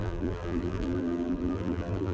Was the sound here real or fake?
fake